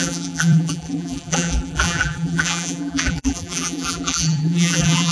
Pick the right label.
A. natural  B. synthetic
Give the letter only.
B